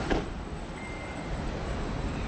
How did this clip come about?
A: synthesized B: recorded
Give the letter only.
A